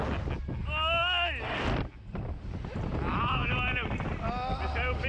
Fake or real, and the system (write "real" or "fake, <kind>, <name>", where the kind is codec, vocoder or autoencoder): real